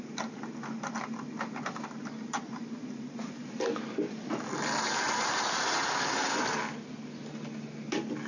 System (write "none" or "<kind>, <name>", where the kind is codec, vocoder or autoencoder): none